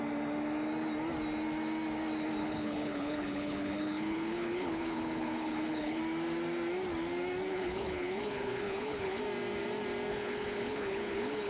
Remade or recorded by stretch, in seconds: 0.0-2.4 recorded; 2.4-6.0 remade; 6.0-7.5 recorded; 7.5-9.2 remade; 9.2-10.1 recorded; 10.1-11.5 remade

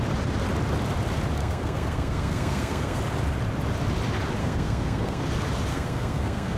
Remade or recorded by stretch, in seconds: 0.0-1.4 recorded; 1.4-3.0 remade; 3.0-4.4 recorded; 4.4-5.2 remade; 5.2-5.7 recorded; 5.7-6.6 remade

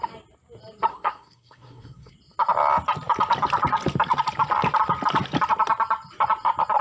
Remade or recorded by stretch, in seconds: 0.0-0.9 recorded; 0.9-2.1 remade; 2.1-6.8 recorded

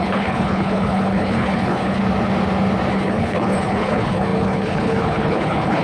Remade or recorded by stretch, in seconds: 0.0-2.0 remade; 2.0-2.9 recorded; 2.9-5.8 remade